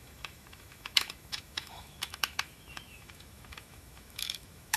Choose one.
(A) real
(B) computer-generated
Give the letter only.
B